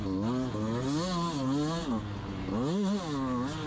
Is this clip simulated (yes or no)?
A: no